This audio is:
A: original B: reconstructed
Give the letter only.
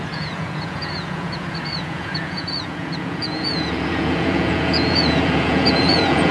B